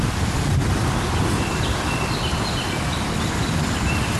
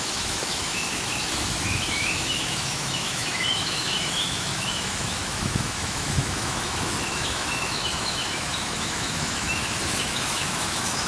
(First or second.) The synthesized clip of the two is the second